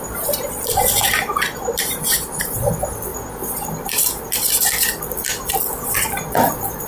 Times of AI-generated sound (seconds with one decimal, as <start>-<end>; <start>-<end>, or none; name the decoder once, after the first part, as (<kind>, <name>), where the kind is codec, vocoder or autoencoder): 1.7-2.7 (vocoder, BigVGAN v2)